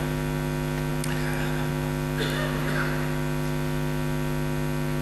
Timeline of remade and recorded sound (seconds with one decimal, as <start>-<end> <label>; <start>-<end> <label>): 0.0-5.0 recorded